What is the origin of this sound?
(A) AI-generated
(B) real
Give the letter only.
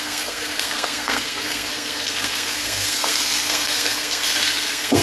A